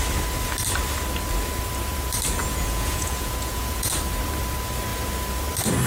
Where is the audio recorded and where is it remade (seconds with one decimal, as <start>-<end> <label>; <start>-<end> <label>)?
0.0-2.4 recorded; 2.4-3.9 remade; 3.9-5.9 recorded

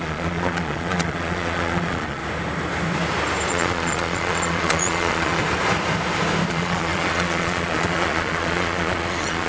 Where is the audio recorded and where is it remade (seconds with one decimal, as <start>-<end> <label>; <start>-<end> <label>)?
0.0-2.2 remade; 2.2-3.5 recorded; 3.5-5.4 remade; 5.4-6.5 recorded; 6.5-9.5 remade

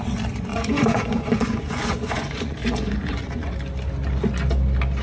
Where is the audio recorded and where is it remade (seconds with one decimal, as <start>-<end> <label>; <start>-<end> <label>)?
0.0-0.5 recorded; 0.5-3.5 remade; 3.5-5.0 recorded

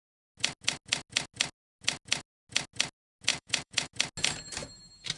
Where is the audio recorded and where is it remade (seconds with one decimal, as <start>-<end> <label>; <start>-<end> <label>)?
0.0-3.3 recorded; 3.3-3.9 remade; 3.9-5.2 recorded

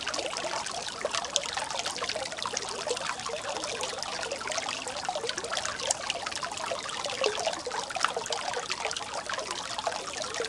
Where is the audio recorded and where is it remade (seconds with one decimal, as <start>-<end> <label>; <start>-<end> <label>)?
0.0-10.5 recorded

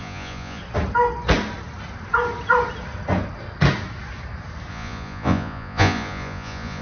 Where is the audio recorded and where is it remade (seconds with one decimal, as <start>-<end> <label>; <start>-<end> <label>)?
0.0-0.6 remade; 0.6-4.7 recorded; 4.7-6.8 remade